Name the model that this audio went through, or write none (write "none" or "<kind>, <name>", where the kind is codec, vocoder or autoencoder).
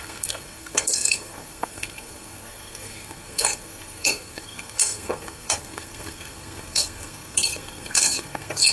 codec, SNAC